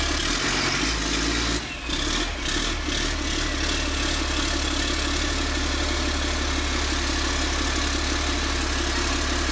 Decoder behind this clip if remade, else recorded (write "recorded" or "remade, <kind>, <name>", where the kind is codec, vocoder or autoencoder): recorded